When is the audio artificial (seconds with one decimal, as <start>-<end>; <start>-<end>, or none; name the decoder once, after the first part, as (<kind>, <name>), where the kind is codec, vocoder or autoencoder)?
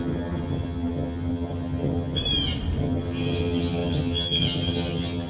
0.0-2.2 (vocoder, HiFi-GAN); 2.8-5.3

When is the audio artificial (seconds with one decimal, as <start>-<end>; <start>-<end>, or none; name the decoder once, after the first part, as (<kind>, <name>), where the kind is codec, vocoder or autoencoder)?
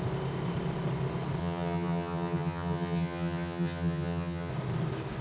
1.4-4.5 (vocoder, HiFi-GAN)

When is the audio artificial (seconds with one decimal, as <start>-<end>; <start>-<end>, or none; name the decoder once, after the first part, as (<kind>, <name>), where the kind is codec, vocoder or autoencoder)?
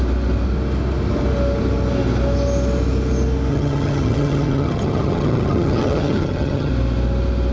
3.5-6.7 (vocoder, HiFi-GAN)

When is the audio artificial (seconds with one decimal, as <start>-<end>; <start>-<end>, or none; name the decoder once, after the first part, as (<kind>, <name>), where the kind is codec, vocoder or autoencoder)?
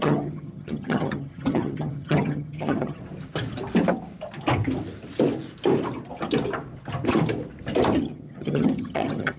0.0-3.0 (vocoder, HiFi-GAN); 8.0-9.4